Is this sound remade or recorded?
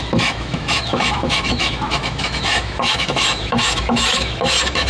remade